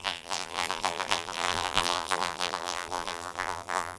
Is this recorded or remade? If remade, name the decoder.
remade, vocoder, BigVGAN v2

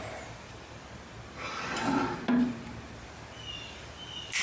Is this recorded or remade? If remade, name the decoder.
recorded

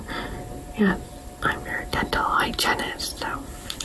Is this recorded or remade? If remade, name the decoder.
recorded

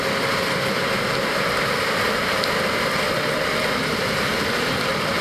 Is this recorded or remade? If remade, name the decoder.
remade, vocoder, BigVGAN v2